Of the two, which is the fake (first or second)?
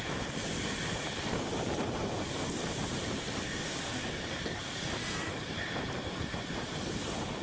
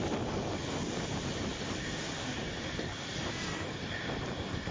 first